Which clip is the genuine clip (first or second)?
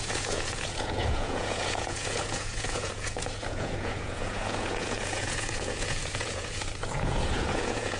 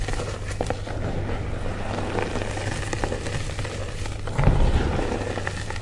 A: second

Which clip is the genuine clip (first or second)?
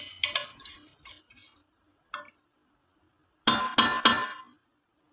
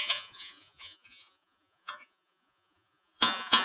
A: first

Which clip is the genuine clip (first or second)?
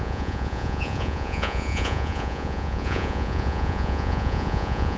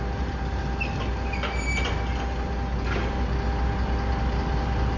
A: second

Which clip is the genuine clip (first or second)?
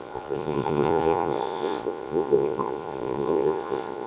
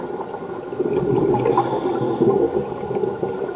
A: second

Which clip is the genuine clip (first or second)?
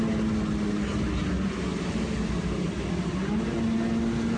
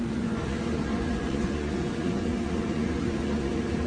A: first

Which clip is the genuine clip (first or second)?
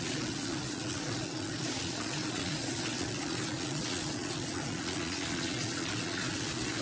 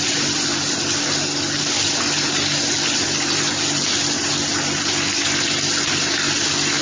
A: second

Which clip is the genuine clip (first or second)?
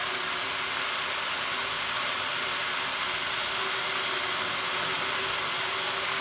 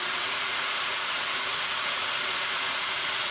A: first